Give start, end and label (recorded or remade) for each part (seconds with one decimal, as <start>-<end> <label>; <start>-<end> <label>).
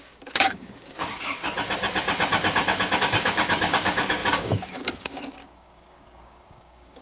0.0-1.4 remade; 1.4-3.0 recorded; 3.0-7.0 remade